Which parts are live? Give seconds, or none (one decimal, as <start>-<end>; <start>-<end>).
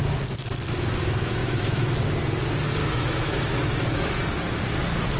0.0-1.4; 2.0-2.8; 4.1-5.2